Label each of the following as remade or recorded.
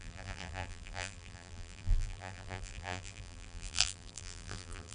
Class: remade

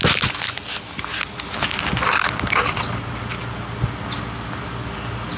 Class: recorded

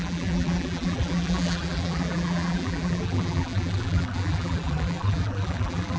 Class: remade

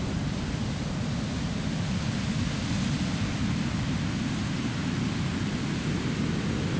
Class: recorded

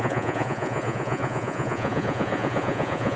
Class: remade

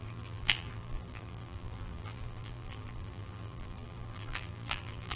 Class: remade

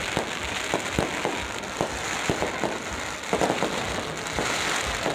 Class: recorded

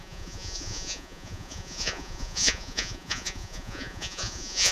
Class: remade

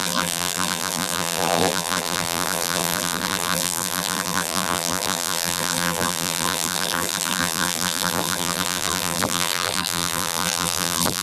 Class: remade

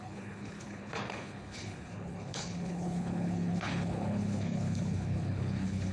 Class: remade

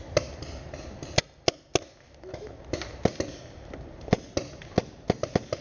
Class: recorded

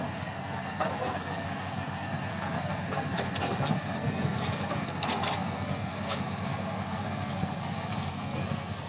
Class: remade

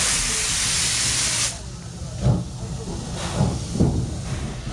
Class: recorded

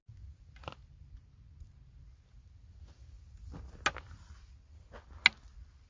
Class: recorded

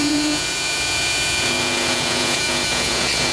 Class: remade